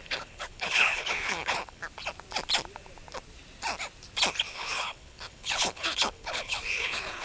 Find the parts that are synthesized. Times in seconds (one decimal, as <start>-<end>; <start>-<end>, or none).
0.0-1.8; 4.5-7.2